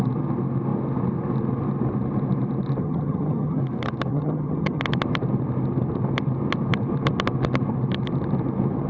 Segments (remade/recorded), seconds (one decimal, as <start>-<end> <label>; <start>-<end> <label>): 0.0-2.8 recorded; 2.8-3.6 remade; 3.6-4.1 recorded; 4.1-4.8 remade; 4.8-8.9 recorded